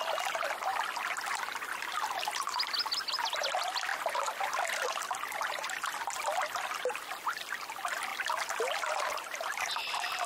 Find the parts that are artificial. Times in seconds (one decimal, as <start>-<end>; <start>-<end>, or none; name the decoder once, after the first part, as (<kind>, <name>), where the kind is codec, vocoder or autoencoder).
none